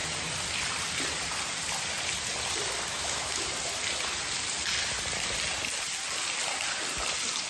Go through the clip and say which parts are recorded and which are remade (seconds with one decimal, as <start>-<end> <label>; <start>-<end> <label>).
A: 0.0-2.9 recorded; 2.9-3.4 remade; 3.4-7.5 recorded